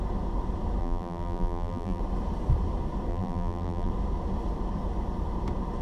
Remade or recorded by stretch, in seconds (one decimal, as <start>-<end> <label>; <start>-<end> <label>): 0.0-0.8 recorded; 0.8-2.0 remade; 2.0-3.1 recorded; 3.1-3.9 remade; 3.9-5.8 recorded